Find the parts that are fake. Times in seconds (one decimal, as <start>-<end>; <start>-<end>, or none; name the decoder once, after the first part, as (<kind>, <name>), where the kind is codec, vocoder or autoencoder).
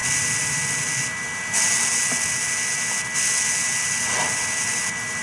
none